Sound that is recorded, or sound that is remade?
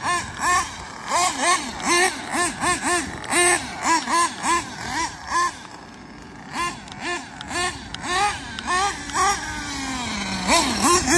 recorded